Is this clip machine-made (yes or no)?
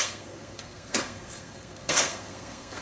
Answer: yes